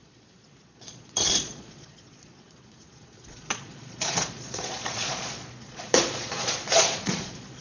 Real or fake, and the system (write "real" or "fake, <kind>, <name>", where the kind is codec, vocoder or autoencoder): fake, vocoder, Vocos